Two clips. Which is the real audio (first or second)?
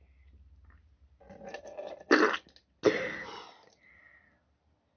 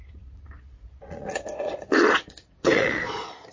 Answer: first